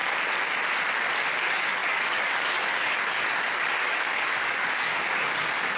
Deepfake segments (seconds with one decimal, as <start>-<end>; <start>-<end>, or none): 1.3-5.8